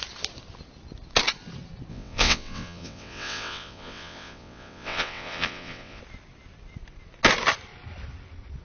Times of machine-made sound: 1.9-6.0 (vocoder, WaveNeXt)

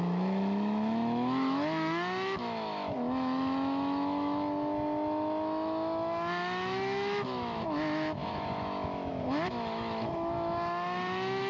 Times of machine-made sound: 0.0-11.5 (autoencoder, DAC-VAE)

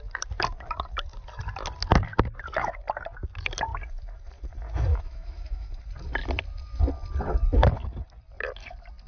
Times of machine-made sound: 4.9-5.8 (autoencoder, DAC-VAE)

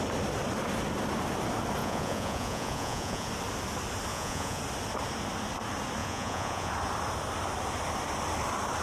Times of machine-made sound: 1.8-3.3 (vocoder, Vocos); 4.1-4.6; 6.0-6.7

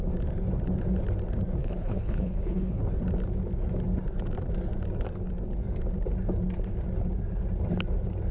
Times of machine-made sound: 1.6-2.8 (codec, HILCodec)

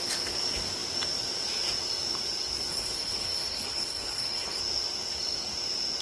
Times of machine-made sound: 2.7-4.6 (codec, HILCodec)